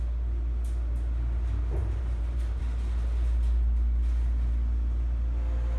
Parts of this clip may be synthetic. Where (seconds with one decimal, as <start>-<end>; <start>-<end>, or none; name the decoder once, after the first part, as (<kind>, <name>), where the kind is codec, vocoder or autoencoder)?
1.8-2.6 (vocoder, BigVGAN v2)